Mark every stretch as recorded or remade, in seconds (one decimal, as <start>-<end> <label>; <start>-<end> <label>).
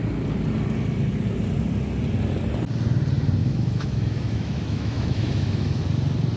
0.0-3.4 recorded; 3.4-5.8 remade; 5.8-6.4 recorded